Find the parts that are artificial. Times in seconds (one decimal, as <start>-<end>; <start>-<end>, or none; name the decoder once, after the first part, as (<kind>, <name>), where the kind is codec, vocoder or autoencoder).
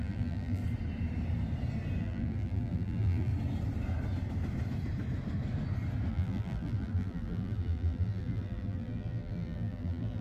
0.0-0.6 (vocoder, BigVGAN v2); 2.0-3.3; 6.1-10.2